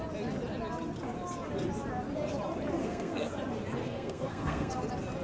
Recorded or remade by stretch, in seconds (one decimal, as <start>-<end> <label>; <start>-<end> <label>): 0.0-2.8 recorded; 2.8-3.3 remade; 3.3-3.8 recorded; 3.8-4.7 remade; 4.7-5.2 recorded